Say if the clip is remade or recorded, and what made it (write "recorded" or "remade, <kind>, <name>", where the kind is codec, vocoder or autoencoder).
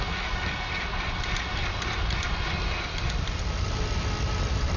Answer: recorded